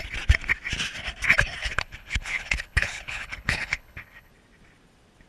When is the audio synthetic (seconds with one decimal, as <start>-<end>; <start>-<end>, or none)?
1.6-4.3